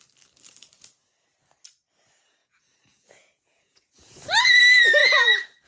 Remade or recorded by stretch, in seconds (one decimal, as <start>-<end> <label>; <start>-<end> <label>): 0.0-2.4 recorded; 2.4-4.6 remade; 4.6-5.0 recorded; 5.0-5.7 remade